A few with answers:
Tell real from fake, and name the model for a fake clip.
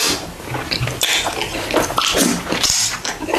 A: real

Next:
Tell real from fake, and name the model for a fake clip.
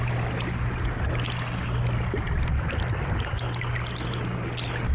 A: real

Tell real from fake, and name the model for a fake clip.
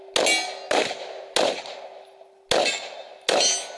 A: real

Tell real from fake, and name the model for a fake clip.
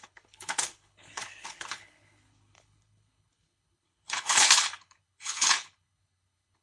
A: fake, codec, HILCodec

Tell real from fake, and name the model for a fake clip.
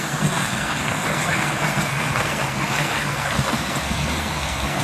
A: fake, codec, SNAC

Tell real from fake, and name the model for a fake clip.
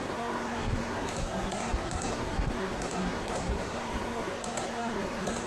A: fake, codec, SNAC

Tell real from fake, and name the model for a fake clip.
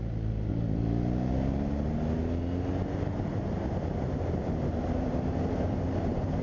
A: real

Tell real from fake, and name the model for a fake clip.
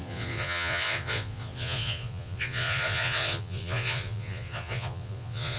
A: fake, vocoder, Vocos